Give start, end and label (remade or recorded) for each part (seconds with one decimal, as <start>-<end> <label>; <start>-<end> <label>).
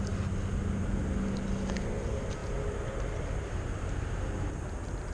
0.0-5.1 recorded